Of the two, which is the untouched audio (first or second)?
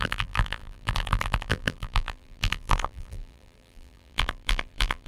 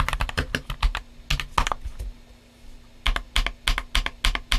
second